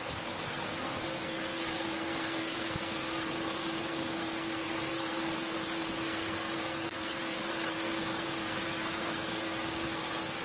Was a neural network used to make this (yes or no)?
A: yes